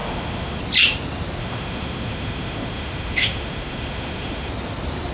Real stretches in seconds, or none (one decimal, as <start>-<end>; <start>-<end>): 0.6-1.4; 4.5-5.1